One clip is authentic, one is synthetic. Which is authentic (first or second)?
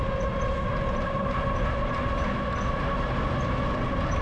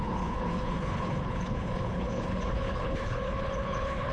first